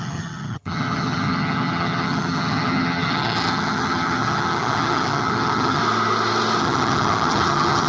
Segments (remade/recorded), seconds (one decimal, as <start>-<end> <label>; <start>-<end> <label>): 0.0-5.8 remade; 5.8-6.6 recorded; 6.6-7.9 remade